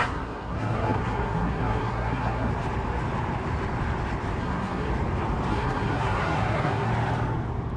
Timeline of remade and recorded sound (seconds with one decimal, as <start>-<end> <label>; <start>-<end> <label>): 0.0-2.5 remade; 2.5-4.4 recorded; 4.4-4.9 remade; 4.9-5.5 recorded; 5.5-6.9 remade; 6.9-7.8 recorded